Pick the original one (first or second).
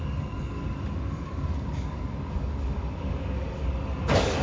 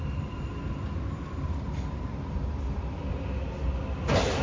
second